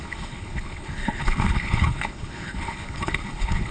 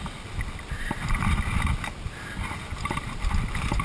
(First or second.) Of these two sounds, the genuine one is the second